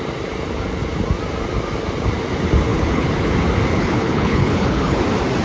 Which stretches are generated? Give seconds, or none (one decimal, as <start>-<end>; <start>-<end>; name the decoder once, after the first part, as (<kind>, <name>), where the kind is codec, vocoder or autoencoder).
2.7-3.3 (codec, HILCodec); 3.7-5.0